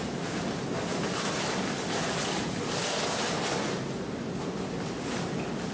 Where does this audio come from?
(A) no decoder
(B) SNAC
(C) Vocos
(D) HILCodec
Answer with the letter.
A